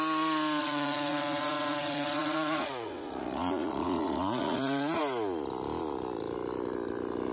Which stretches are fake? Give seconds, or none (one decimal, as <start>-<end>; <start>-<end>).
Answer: 0.6-5.0

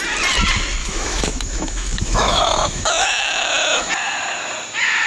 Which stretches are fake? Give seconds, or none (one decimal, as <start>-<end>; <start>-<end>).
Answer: 0.8-3.9

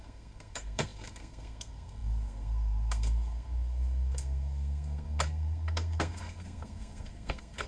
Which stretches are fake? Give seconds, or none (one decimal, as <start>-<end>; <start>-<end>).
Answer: 0.0-7.7

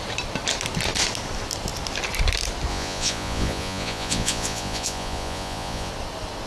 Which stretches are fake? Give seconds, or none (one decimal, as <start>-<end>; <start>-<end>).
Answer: 2.7-5.9

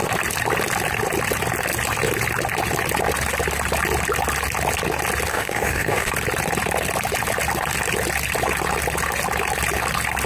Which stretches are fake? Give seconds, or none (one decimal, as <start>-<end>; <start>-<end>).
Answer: 5.3-6.1

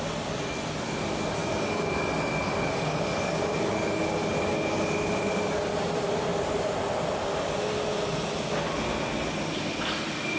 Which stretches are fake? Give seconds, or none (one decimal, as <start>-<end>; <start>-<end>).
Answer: none

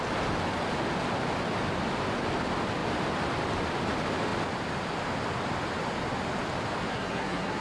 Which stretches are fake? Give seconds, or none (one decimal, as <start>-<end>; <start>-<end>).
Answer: 6.9-7.6

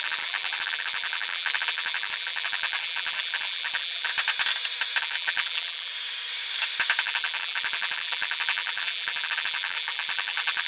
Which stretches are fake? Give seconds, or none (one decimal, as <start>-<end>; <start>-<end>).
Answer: 0.0-4.1; 5.0-5.9; 7.0-10.7